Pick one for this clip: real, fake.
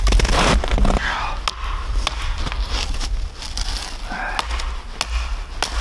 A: real